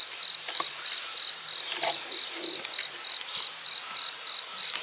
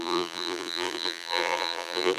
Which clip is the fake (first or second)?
second